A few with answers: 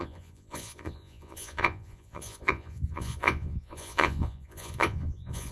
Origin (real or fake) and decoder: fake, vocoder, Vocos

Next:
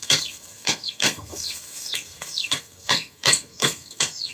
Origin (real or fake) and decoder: fake, codec, SNAC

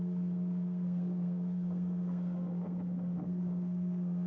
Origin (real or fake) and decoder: fake, codec, SNAC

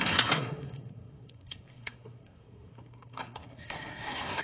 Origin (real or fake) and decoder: fake, codec, SNAC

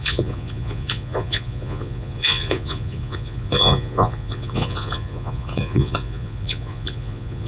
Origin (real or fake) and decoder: fake, vocoder, Vocos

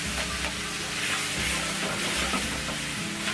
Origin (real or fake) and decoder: real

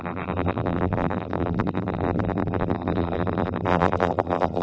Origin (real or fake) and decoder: fake, vocoder, BigVGAN v2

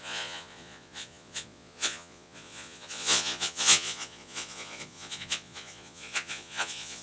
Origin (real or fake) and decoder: fake, vocoder, Vocos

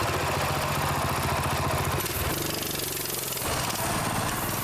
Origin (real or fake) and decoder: real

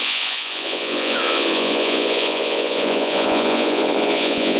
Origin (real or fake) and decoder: fake, vocoder, Vocos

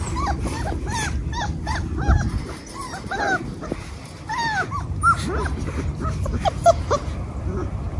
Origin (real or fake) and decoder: real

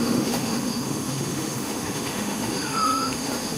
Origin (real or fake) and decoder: fake, autoencoder, DAC-VAE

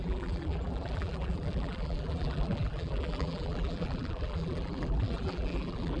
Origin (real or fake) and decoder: fake, vocoder, BigVGAN v2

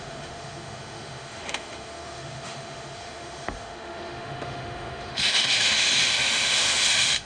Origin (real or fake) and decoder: fake, autoencoder, DAC-VAE